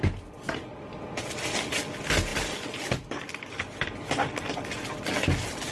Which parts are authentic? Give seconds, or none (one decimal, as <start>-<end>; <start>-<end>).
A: 0.0-5.7